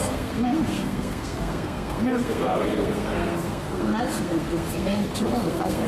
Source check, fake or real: fake